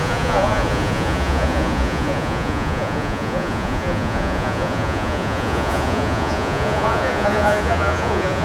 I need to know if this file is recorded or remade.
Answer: remade